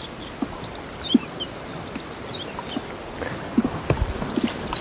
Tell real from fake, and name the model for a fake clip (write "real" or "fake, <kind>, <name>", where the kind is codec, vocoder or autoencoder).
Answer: real